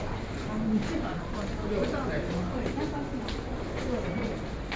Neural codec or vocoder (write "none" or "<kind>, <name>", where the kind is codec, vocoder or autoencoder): none